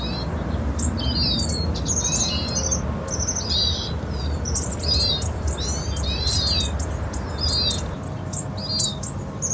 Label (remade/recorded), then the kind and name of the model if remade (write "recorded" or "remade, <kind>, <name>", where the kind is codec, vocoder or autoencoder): recorded